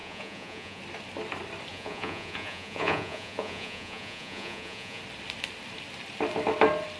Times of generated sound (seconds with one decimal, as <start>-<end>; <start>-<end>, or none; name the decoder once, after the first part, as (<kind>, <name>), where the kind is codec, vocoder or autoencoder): 0.0-0.8 (vocoder, Vocos); 1.7-5.0